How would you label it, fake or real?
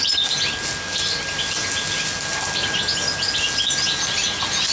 real